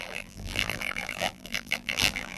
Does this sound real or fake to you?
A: fake